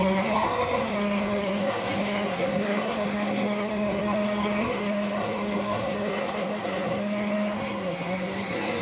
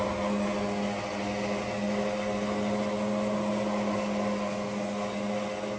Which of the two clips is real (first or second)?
second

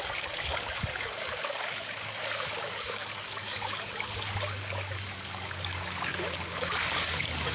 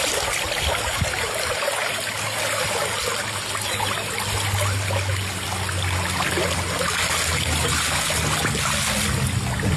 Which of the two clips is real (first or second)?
second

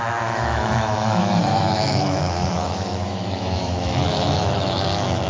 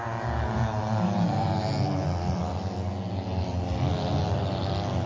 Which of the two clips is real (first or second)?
second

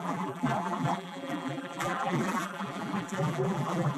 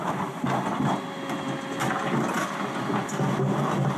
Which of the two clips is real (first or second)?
second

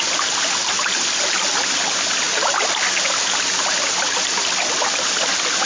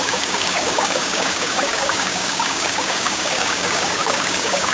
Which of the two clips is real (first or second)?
first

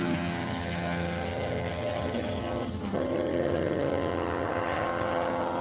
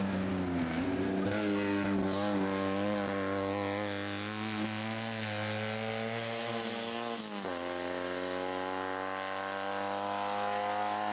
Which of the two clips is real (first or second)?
second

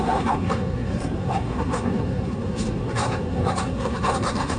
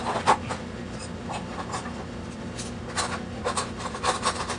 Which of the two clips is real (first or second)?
second